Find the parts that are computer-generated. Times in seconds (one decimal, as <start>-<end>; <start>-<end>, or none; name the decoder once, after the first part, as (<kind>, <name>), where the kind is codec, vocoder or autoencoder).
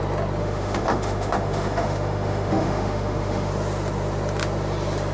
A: 0.4-3.5 (autoencoder, DAC-VAE)